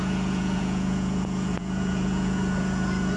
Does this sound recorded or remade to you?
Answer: remade